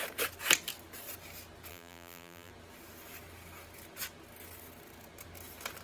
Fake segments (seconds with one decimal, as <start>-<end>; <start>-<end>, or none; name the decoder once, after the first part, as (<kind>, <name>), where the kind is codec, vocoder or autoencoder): 1.7-2.5 (vocoder, BigVGAN v2)